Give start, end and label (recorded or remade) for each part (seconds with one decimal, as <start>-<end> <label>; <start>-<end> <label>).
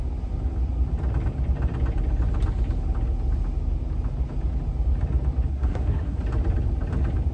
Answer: 0.0-5.5 recorded; 5.5-6.2 remade; 6.2-7.3 recorded